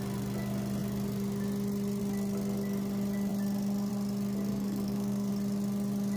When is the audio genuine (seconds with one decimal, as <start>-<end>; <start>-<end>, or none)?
0.0-4.5; 5.3-6.2